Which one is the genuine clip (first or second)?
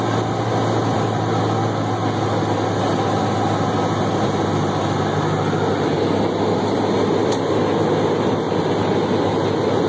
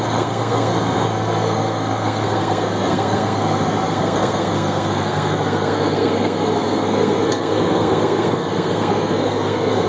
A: first